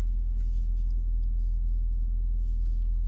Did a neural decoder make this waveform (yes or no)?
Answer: no